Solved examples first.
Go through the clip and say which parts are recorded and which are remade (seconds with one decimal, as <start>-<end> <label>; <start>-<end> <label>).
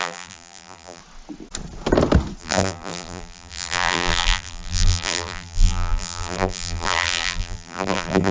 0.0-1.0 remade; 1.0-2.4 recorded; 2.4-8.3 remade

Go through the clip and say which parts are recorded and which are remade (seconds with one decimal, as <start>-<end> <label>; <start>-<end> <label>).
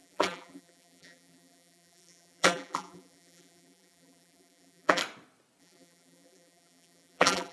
0.0-5.0 remade; 5.0-5.6 recorded; 5.6-7.5 remade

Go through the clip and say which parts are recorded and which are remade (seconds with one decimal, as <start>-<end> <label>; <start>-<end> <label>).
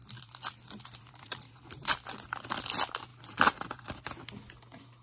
0.0-1.6 remade; 1.6-3.1 recorded; 3.1-4.1 remade; 4.1-5.0 recorded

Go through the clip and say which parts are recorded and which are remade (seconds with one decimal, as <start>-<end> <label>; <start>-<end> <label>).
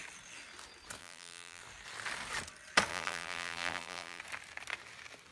0.0-1.0 recorded; 1.0-1.6 remade; 1.6-2.9 recorded; 2.9-4.2 remade; 4.2-5.3 recorded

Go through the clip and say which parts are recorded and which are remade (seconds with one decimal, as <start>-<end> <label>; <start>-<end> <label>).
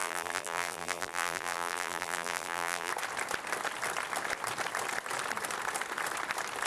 0.0-2.9 remade; 2.9-6.7 recorded